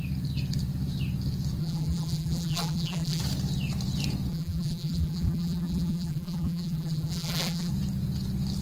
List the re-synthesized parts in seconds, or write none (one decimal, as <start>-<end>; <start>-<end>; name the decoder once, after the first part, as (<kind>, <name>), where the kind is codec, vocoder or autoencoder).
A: 1.6-3.2 (vocoder, BigVGAN v2); 4.3-7.7